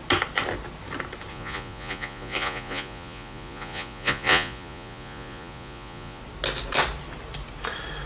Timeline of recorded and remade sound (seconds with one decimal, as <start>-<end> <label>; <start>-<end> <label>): 0.0-1.3 recorded; 1.3-6.2 remade; 6.2-8.1 recorded